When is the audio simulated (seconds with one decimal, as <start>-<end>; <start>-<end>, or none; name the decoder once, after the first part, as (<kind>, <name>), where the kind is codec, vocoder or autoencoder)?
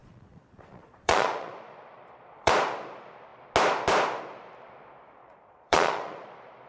0.0-2.5 (vocoder, Vocos); 5.2-6.3